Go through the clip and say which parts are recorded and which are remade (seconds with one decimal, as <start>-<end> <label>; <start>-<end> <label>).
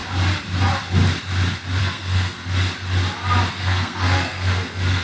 0.0-1.8 recorded; 1.8-2.4 remade; 2.4-3.5 recorded; 3.5-5.0 remade